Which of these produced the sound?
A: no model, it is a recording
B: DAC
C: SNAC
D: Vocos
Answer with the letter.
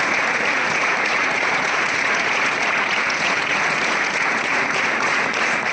D